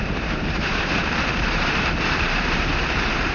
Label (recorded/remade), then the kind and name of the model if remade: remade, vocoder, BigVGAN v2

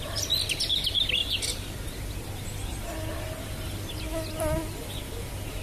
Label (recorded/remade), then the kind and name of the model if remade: recorded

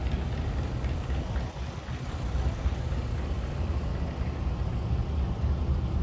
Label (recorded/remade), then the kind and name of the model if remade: recorded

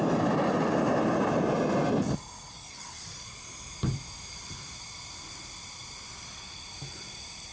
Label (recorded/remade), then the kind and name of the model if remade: remade, vocoder, BigVGAN v2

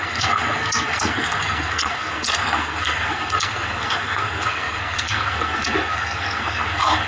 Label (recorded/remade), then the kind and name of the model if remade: remade, codec, SNAC